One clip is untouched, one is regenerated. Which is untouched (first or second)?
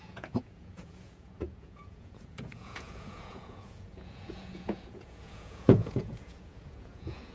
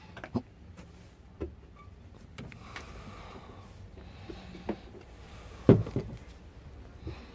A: second